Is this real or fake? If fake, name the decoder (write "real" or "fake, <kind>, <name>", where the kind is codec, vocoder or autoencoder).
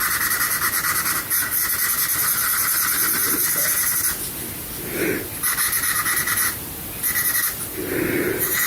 real